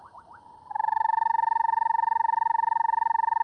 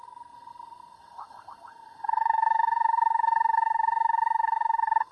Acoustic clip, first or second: first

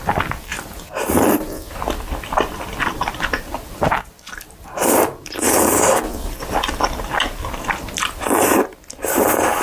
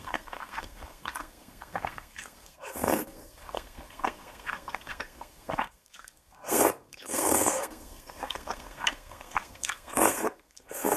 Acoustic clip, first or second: first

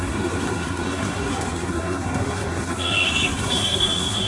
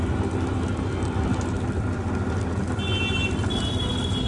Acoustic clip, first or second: second